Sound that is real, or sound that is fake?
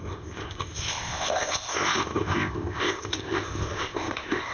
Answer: fake